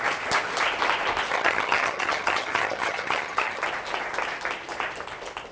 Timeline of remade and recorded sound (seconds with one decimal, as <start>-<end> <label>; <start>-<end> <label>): 0.0-1.3 recorded; 1.3-3.6 remade; 3.6-5.5 recorded